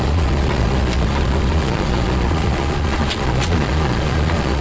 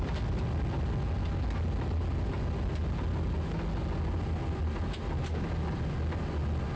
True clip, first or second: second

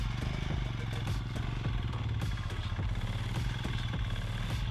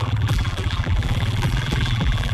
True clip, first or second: first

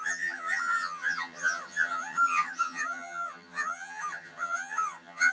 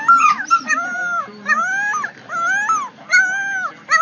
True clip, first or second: second